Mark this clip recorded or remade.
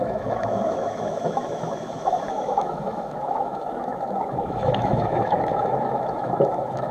remade